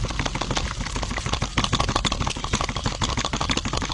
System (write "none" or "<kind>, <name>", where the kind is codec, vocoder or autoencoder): none